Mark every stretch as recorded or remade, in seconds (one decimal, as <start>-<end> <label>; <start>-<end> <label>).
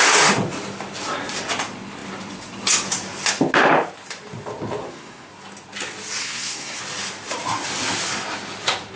0.0-4.8 recorded; 4.8-5.3 remade; 5.3-6.2 recorded; 6.2-6.8 remade; 6.8-9.0 recorded